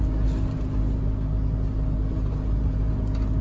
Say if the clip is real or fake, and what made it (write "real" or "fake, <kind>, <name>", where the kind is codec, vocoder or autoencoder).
real